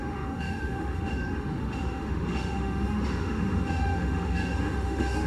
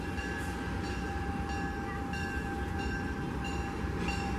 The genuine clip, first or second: second